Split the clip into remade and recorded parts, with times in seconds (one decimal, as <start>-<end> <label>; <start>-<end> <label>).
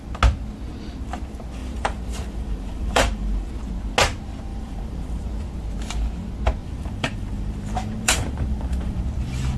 0.0-1.6 recorded; 1.6-3.5 remade; 3.5-4.5 recorded; 4.5-5.3 remade; 5.3-6.6 recorded; 6.6-9.0 remade; 9.0-9.6 recorded